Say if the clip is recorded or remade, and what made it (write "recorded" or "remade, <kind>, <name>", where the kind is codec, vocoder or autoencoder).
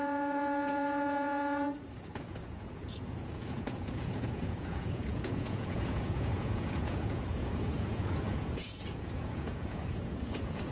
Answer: remade, vocoder, Vocos